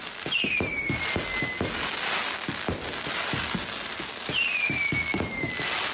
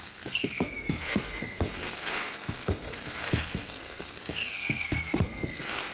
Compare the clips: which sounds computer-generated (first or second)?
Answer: second